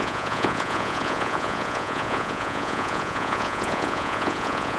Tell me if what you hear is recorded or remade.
remade